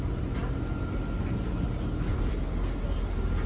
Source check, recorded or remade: recorded